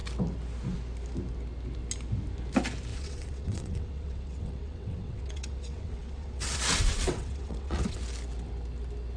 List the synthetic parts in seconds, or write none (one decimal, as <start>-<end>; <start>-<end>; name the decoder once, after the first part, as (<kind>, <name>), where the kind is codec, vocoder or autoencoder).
2.9-8.0 (vocoder, WaveNeXt)